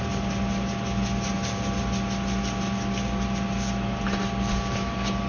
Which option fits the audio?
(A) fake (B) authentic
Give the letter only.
B